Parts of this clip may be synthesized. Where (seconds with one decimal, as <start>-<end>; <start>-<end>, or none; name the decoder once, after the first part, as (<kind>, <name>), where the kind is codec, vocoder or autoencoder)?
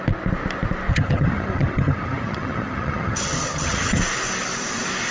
0.9-4.0 (vocoder, HiFi-GAN)